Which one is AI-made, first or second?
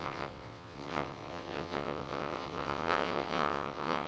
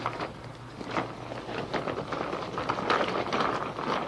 first